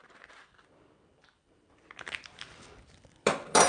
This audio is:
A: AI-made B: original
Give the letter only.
B